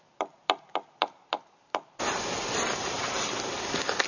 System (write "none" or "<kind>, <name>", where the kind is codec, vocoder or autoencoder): none